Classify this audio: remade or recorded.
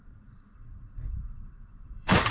remade